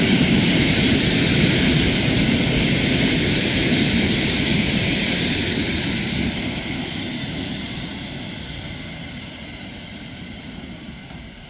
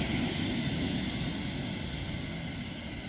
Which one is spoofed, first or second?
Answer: first